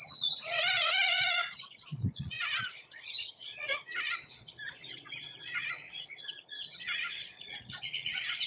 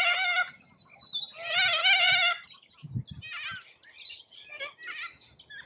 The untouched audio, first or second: second